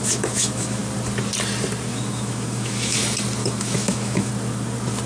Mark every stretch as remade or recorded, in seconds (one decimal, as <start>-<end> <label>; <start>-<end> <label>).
0.0-0.8 remade; 0.8-1.9 recorded; 1.9-3.0 remade; 3.0-3.4 recorded; 3.4-4.3 remade; 4.3-5.1 recorded